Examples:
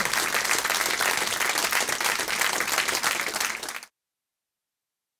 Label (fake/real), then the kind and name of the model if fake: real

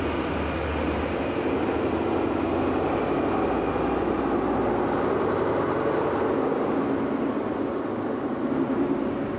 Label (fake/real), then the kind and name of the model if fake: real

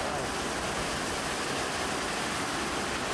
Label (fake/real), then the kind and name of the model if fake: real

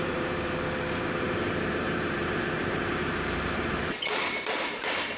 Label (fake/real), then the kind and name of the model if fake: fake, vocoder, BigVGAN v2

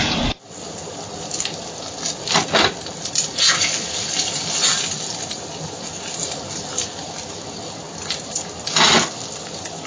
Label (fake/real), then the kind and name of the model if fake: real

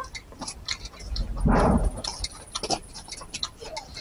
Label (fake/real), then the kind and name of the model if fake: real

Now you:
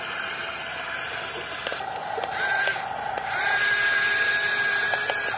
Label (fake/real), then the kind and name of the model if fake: real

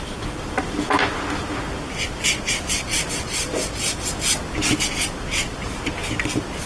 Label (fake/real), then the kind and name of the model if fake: real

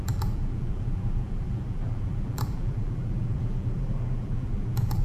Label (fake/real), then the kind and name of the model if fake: fake, vocoder, BigVGAN v2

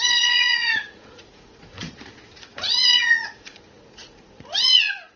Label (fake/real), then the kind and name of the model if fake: fake, vocoder, Vocos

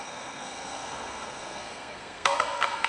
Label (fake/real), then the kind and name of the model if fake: fake, codec, SNAC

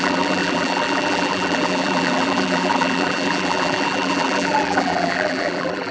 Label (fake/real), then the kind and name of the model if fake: fake, vocoder, BigVGAN v2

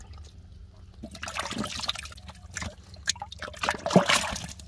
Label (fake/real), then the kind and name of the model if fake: real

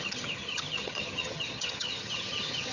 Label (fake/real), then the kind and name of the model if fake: fake, vocoder, HiFi-GAN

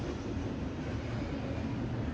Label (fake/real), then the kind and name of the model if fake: real